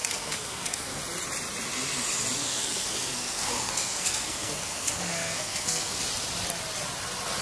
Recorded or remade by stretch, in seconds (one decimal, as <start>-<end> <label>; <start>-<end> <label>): 0.0-1.0 remade; 1.0-2.4 recorded; 2.4-6.0 remade; 6.0-7.4 recorded